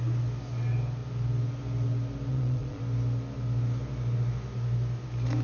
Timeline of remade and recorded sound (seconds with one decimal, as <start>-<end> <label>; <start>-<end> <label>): 0.0-2.3 recorded; 2.3-2.8 remade; 2.8-5.4 recorded